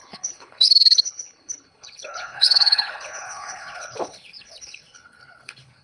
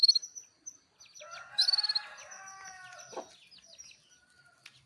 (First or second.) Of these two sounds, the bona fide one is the second